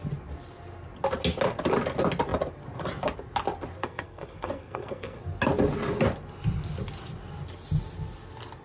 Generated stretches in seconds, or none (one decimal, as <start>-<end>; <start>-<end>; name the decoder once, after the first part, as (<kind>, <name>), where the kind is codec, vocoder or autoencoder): 3.8-5.2 (codec, SNAC)